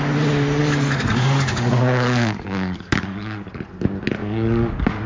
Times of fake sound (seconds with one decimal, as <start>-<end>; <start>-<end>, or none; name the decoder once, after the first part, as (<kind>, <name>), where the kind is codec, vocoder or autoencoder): 0.6-3.5 (codec, DAC); 4.2-5.1